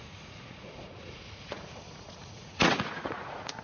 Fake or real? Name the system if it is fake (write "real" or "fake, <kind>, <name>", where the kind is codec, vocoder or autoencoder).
fake, vocoder, Vocos